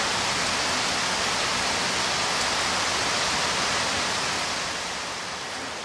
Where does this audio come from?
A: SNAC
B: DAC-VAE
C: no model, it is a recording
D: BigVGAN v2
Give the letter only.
C